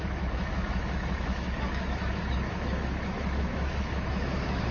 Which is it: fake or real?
fake